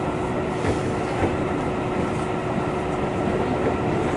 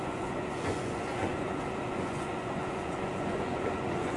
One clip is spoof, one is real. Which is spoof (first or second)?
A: second